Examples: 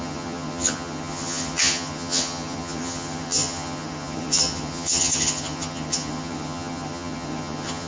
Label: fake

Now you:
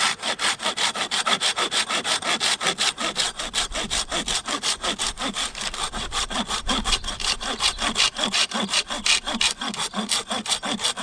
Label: fake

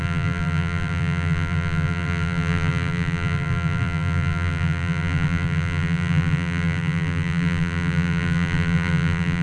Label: fake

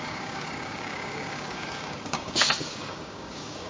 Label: fake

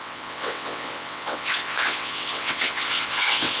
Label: fake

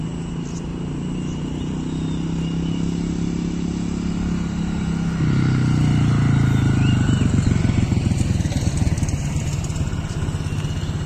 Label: real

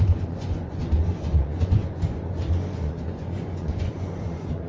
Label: fake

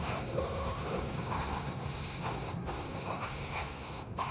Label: fake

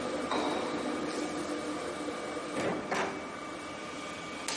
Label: real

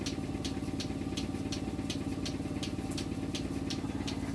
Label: real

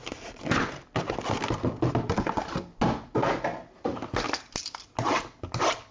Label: real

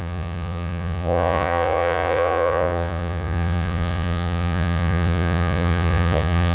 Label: fake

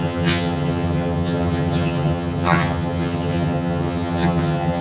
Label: fake